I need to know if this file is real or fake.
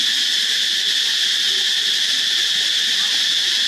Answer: real